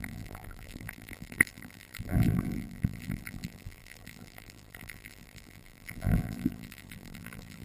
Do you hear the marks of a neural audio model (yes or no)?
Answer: yes